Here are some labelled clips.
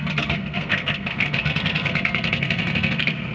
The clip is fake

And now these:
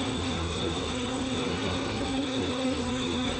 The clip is fake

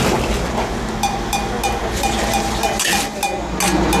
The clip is real